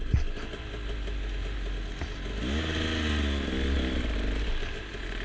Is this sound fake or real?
real